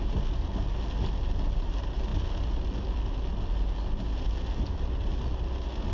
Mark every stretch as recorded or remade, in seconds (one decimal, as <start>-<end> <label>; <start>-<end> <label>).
0.0-5.9 recorded